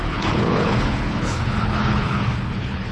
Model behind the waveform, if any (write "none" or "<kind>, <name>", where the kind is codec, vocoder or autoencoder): codec, HILCodec